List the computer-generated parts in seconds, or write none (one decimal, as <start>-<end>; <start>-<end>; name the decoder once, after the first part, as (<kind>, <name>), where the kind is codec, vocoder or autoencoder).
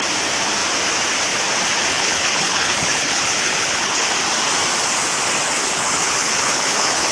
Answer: 1.9-4.1 (codec, HILCodec); 5.6-7.1